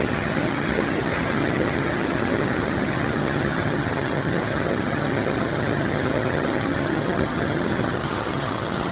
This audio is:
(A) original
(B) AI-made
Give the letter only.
B